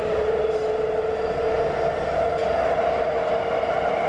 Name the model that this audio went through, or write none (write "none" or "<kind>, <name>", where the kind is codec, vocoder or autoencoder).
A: none